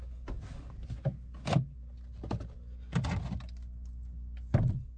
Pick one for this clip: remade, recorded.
recorded